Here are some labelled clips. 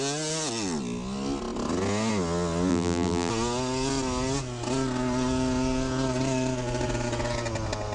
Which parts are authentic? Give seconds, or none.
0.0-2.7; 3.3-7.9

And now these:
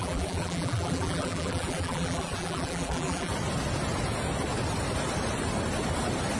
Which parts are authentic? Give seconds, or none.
3.3-6.4

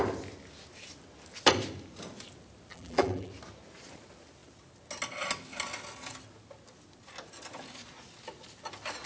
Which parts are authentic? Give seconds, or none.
0.0-2.7; 3.3-9.1

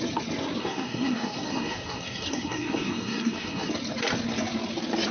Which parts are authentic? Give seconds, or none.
0.0-0.6; 3.7-5.1

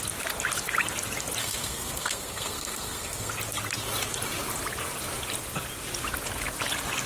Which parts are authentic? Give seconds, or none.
0.0-1.4; 3.3-7.1

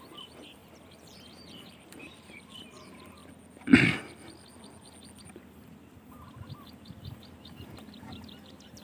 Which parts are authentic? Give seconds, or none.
3.2-5.2

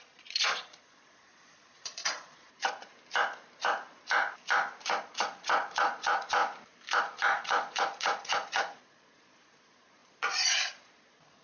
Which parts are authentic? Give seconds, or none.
2.9-5.0; 6.4-7.0

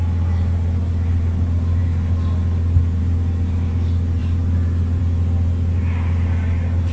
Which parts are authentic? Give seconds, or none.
0.0-6.9